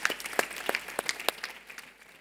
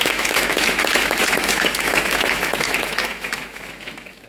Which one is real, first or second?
first